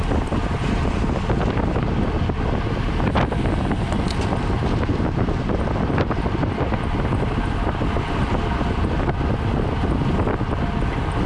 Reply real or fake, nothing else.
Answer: fake